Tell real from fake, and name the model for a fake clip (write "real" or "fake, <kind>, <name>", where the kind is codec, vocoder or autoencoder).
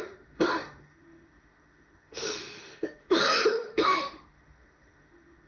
fake, autoencoder, DAC-VAE